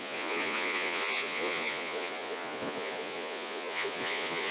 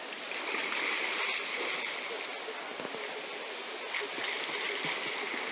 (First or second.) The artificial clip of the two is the first